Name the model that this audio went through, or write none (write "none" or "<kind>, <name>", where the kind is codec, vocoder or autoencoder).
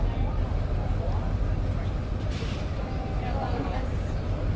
none